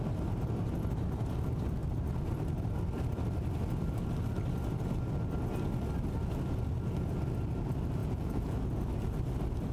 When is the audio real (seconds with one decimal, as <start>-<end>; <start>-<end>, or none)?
0.0-8.0; 8.6-9.7